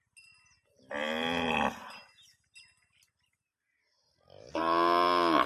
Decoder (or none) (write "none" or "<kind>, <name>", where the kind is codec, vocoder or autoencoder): none